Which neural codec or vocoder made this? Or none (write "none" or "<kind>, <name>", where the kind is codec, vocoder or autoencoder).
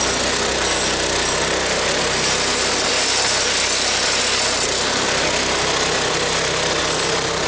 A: none